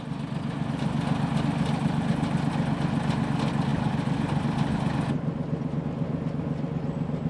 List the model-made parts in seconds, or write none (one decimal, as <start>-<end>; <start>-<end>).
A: none

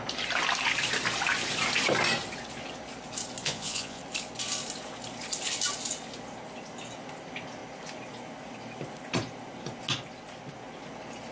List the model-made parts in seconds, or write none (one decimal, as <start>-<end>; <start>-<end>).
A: 3.4-4.0